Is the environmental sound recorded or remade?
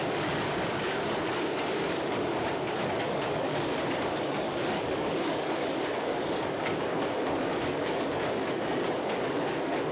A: remade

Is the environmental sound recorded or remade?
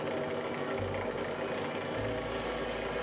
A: recorded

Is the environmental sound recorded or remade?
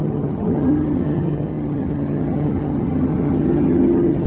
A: remade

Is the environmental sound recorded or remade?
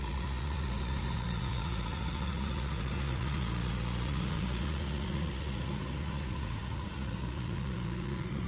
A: remade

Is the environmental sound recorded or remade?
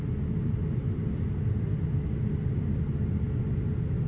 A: recorded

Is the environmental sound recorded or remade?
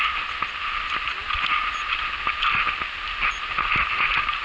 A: recorded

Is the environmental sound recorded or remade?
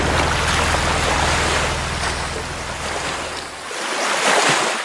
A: recorded